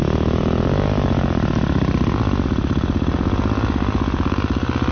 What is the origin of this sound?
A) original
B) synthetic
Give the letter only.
A